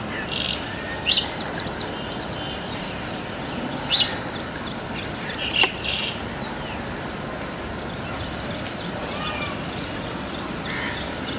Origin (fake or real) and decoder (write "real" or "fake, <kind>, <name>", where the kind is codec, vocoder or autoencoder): real